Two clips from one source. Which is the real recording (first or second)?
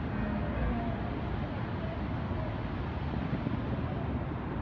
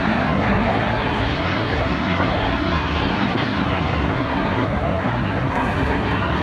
first